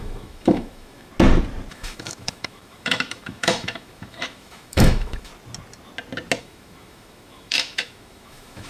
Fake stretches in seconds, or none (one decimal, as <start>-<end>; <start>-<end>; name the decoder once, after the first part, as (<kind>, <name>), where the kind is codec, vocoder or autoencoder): 0.0-1.1 (autoencoder, DAC-VAE); 1.7-5.3; 6.4-8.7